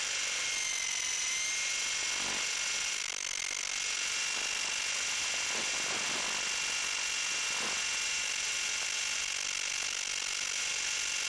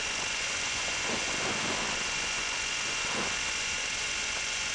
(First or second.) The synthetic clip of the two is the second